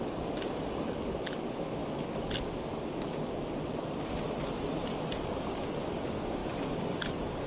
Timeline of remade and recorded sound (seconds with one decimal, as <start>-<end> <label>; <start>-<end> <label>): 0.0-7.5 recorded